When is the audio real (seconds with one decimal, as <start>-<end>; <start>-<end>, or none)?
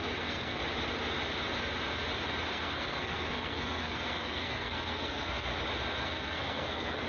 0.6-2.5; 5.5-6.0